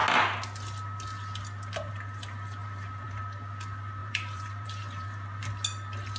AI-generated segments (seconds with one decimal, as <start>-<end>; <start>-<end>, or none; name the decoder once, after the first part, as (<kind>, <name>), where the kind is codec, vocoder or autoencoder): 2.6-3.2 (vocoder, BigVGAN v2); 4.0-5.4